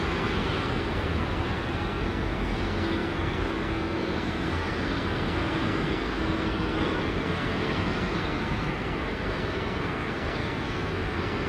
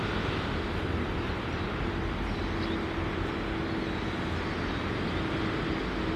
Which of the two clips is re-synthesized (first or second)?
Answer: first